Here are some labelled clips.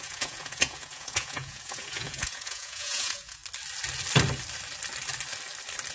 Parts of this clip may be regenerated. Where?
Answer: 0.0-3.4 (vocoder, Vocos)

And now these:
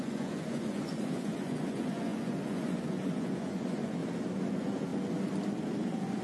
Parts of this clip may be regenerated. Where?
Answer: 0.0-4.0 (vocoder, Vocos); 4.5-4.9

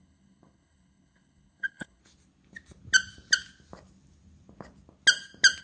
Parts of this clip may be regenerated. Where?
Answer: 0.0-2.0 (codec, HILCodec)

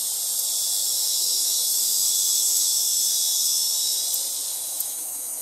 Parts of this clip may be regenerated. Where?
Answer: 0.8-4.0 (autoencoder, DAC-VAE); 4.5-5.4

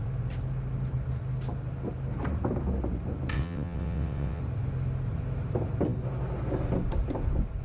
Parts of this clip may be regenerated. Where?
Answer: 3.3-4.4 (vocoder, WaveNeXt)

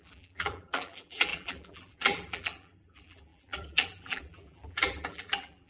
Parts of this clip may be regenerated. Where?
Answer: 0.0-5.7 (vocoder, BigVGAN v2)

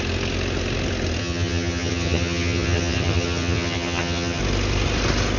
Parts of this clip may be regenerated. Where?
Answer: 1.2-4.4 (vocoder, HiFi-GAN)

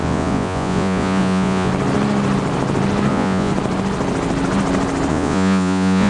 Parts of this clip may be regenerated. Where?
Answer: 0.0-1.7 (vocoder, Vocos); 3.1-3.5; 5.1-6.1